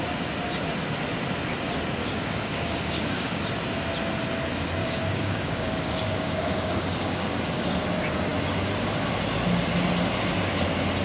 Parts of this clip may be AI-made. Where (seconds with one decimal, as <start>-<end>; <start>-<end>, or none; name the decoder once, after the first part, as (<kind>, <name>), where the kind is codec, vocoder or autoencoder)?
2.0-3.4 (codec, DAC); 4.8-7.7